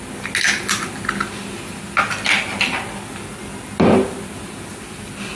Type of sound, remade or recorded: recorded